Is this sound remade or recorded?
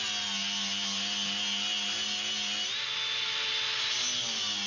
recorded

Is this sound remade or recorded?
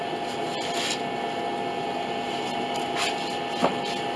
recorded